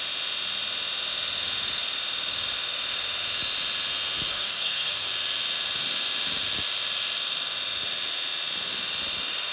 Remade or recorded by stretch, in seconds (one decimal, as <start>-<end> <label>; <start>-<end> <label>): 0.0-4.3 recorded; 4.3-5.1 remade; 5.1-9.5 recorded

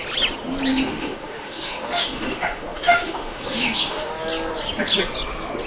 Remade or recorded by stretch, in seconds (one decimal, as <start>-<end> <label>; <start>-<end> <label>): 0.0-0.7 recorded; 0.7-4.1 remade; 4.1-5.7 recorded

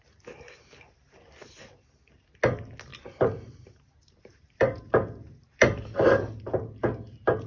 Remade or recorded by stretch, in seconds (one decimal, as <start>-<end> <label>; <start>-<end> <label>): 0.0-2.9 recorded; 2.9-7.5 remade

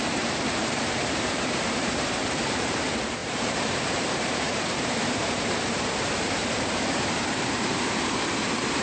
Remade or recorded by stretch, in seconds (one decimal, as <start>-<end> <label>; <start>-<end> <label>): 0.0-8.8 remade

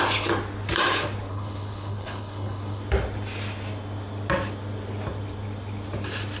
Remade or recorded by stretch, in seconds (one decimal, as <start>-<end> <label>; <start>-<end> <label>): 0.0-1.3 recorded; 1.3-2.8 remade; 2.8-6.4 recorded